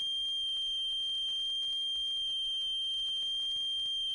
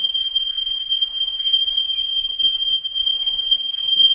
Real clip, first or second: first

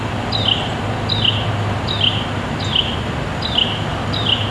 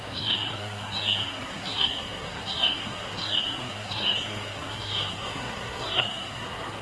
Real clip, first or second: first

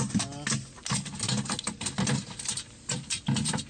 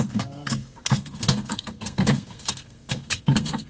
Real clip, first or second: first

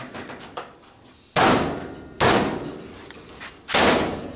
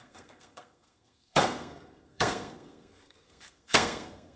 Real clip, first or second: first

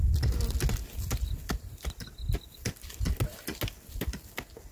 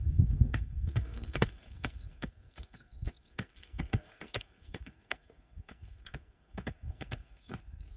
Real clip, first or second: first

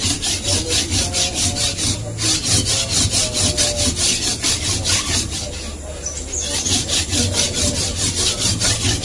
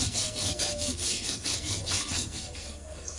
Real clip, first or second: first